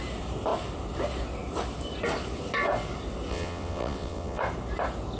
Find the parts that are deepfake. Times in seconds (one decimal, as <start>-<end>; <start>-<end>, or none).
3.3-4.4